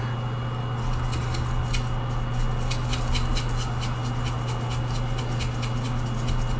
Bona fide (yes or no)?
yes